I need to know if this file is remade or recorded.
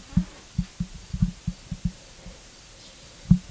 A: recorded